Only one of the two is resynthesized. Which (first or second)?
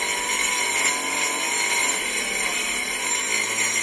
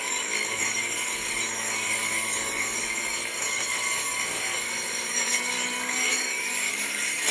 second